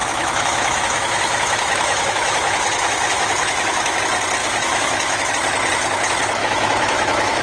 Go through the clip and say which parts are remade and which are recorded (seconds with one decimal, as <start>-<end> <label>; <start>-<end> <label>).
0.0-4.0 remade; 4.0-4.4 recorded; 4.4-5.3 remade; 5.3-6.4 recorded; 6.4-7.4 remade